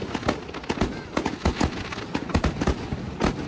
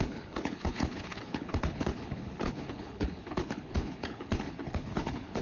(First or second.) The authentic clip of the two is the first